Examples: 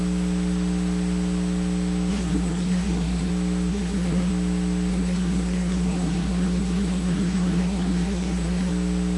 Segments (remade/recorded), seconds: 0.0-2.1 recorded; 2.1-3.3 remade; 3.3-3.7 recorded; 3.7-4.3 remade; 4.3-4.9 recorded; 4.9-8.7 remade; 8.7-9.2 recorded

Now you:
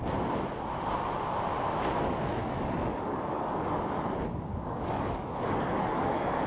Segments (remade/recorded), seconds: 0.0-2.4 recorded; 2.4-6.5 remade

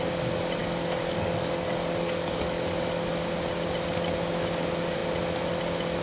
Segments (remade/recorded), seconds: 0.0-0.6 recorded; 0.6-3.1 remade; 3.1-6.0 recorded